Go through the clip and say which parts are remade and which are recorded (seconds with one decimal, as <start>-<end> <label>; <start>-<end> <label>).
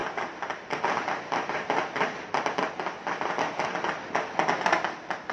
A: 0.0-5.3 recorded